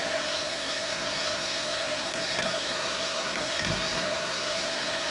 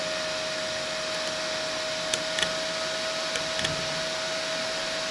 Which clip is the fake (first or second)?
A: first